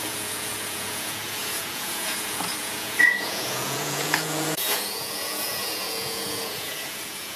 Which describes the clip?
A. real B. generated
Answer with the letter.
B